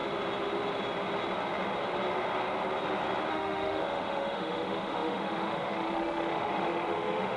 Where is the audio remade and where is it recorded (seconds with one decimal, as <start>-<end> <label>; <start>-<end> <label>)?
0.0-3.3 recorded; 3.3-7.4 remade